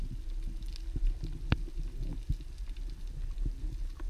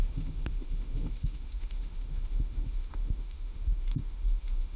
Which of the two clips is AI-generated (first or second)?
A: second